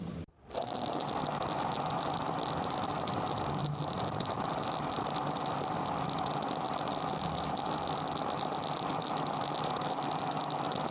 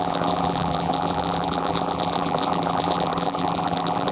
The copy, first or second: second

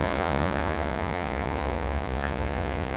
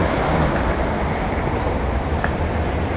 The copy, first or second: first